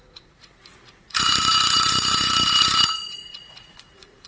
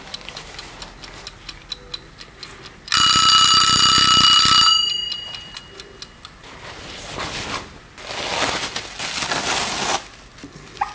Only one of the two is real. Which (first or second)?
second